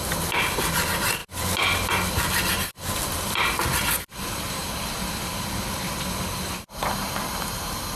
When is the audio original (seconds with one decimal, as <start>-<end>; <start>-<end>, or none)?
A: 0.0-8.0